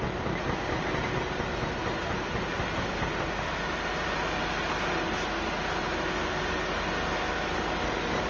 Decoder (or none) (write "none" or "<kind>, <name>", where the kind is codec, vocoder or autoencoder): none